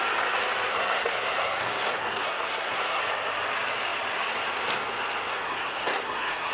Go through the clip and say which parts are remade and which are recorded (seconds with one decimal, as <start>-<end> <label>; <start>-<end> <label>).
0.0-0.7 recorded; 0.7-3.0 remade; 3.0-5.3 recorded; 5.3-6.5 remade